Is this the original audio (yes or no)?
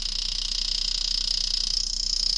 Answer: yes